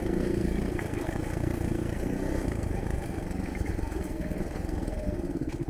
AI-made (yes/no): yes